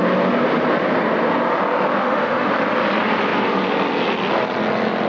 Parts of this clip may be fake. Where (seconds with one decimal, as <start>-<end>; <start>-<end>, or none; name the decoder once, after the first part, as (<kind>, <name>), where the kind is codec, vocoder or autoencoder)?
2.0-2.5 (autoencoder, DAC-VAE)